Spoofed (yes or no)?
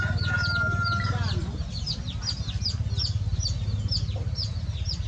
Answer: no